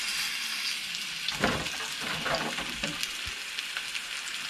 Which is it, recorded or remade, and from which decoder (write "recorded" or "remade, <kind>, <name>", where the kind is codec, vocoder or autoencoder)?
recorded